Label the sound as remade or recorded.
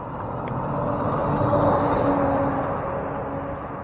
recorded